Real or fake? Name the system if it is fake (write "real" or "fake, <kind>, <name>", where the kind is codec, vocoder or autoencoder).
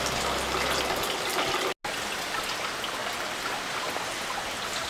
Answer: real